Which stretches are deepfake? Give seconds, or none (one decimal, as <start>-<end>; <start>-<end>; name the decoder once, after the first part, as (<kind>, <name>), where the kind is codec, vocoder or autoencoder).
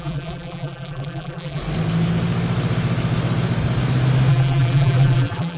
0.0-1.6 (vocoder, BigVGAN v2); 4.3-5.6